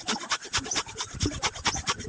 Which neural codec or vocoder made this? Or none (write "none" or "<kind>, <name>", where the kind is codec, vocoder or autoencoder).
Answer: none